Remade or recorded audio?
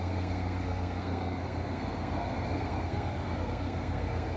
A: remade